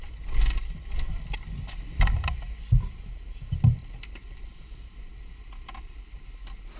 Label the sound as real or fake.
real